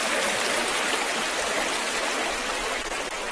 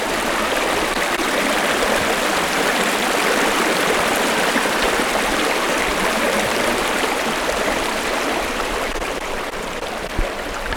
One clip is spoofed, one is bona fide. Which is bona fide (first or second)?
first